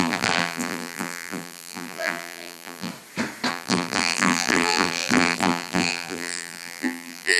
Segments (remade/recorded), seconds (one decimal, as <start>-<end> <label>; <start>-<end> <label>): 0.0-2.9 remade; 2.9-3.5 recorded; 3.5-7.4 remade